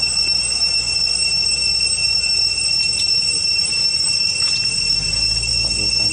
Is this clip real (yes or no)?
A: yes